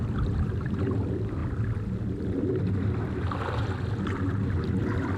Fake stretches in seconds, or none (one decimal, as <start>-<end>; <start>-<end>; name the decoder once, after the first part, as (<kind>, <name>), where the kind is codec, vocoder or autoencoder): 0.0-1.4 (vocoder, BigVGAN v2); 2.7-5.2